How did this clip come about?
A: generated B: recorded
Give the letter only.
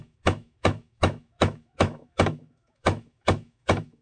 A